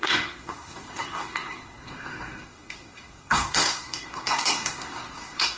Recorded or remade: remade